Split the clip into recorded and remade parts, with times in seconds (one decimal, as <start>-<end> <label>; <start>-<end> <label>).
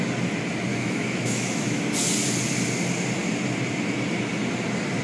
0.0-0.7 recorded; 0.7-1.8 remade; 1.8-5.0 recorded